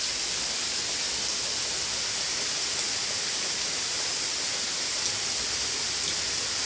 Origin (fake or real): real